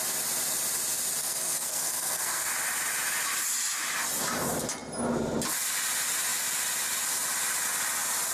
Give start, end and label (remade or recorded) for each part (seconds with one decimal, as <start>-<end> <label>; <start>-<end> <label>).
0.0-1.2 recorded; 1.2-2.5 remade; 2.5-8.3 recorded